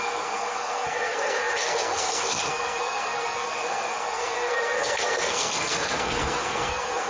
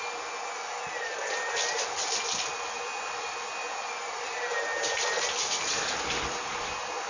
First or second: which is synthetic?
first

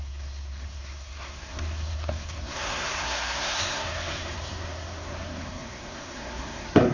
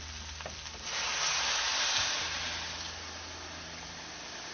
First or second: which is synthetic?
first